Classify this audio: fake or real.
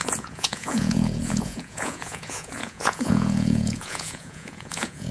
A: fake